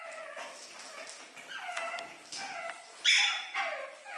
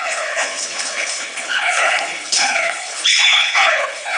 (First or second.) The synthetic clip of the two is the second